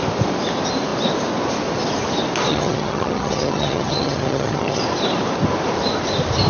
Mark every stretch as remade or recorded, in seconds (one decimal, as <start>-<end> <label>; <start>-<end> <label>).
0.0-2.5 recorded; 2.5-4.8 remade; 4.8-6.5 recorded